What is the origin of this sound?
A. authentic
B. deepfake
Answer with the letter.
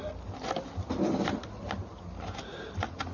A